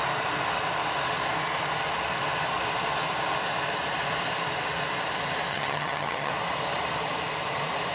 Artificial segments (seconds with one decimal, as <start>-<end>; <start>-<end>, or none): 5.5-6.3